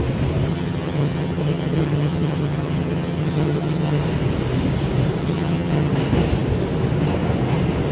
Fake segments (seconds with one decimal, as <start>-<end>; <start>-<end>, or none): 0.5-4.0; 5.2-5.9